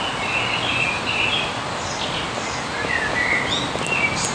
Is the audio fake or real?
real